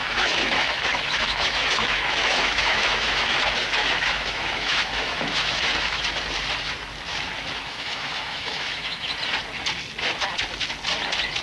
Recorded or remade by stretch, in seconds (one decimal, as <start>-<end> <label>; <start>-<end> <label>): 0.0-3.4 remade; 3.4-3.8 recorded; 3.8-6.0 remade; 6.0-7.6 recorded; 7.6-9.1 remade; 9.1-11.4 recorded